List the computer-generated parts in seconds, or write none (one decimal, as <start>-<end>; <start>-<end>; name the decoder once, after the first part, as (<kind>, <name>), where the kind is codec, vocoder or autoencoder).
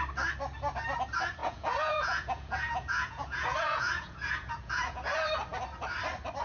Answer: 1.4-5.1 (vocoder, Vocos)